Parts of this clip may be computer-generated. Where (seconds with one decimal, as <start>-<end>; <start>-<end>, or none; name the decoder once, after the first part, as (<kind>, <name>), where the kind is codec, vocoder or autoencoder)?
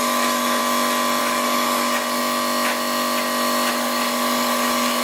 0.0-0.6 (codec, DAC); 1.2-2.2; 3.7-5.0